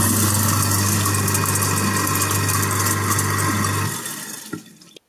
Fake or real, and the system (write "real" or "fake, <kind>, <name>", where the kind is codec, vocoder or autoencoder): real